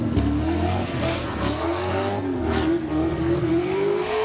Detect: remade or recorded remade